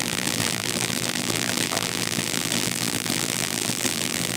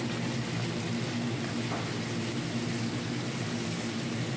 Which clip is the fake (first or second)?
first